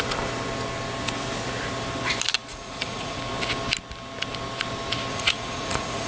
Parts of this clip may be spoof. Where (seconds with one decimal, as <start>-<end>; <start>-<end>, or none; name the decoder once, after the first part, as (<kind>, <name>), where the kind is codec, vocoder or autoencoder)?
2.5-3.2 (vocoder, Vocos); 5.1-6.1